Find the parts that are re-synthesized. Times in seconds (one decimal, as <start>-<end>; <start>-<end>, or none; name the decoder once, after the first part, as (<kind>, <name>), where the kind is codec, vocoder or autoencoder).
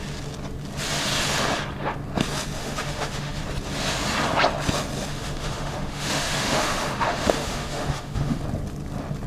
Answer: 2.6-3.4 (autoencoder, DAC-VAE); 5.1-8.4